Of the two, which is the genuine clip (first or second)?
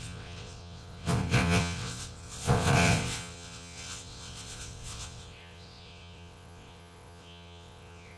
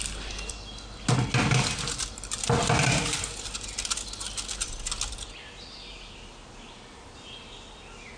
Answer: second